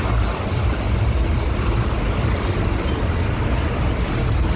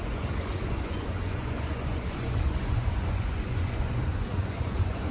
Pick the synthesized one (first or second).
second